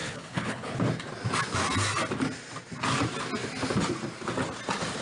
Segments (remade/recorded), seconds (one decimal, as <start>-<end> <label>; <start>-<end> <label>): 0.0-0.8 remade; 0.8-5.0 recorded